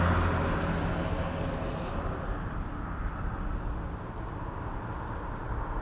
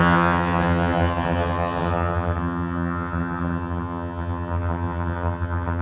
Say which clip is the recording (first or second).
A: first